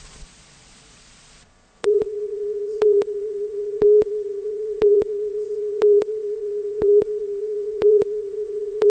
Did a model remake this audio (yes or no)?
yes